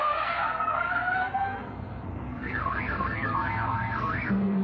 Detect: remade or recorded remade